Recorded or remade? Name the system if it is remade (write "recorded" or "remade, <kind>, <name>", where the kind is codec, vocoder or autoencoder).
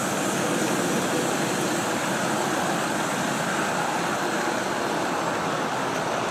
recorded